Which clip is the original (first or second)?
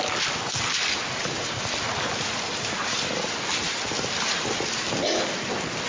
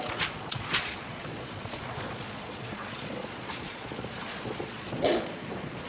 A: first